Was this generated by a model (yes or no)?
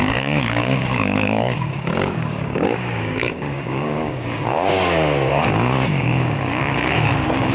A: yes